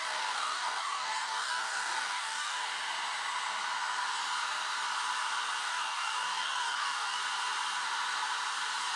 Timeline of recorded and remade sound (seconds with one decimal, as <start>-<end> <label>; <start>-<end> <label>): 0.0-2.7 remade; 2.7-5.6 recorded; 5.6-7.2 remade; 7.2-9.0 recorded